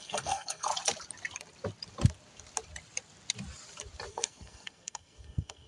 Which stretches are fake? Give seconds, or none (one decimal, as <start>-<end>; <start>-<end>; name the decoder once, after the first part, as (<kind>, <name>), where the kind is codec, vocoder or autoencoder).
0.0-0.7 (codec, SNAC); 4.1-5.7